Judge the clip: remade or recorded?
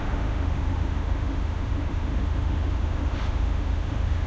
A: remade